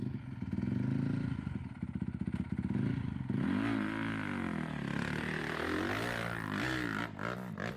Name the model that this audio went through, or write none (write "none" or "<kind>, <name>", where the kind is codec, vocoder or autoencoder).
none